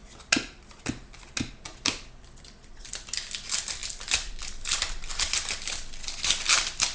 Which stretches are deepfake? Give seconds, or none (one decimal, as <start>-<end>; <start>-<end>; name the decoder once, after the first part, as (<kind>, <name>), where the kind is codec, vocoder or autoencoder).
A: none